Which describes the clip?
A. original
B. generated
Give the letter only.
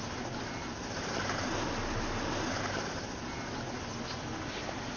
A